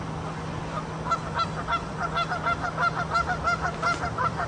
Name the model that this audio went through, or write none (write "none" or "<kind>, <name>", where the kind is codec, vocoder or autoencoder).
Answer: none